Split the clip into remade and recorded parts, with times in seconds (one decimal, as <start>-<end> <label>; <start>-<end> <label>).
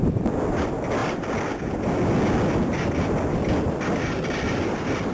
0.0-5.1 recorded